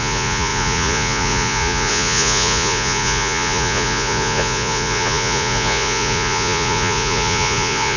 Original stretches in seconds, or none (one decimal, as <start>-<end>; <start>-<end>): none